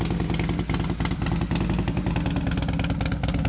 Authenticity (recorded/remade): recorded